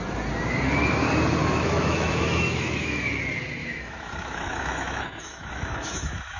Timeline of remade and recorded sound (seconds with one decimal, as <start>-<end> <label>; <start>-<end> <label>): 0.0-1.4 recorded; 1.4-3.0 remade; 3.0-3.6 recorded; 3.6-6.4 remade